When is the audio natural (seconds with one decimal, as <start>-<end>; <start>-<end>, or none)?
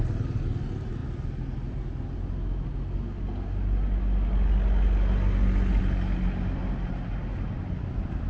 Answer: 0.0-8.3